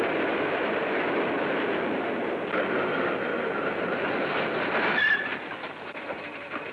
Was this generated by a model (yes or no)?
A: no